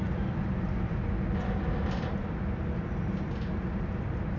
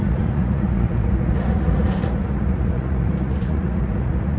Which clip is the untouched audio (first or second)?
first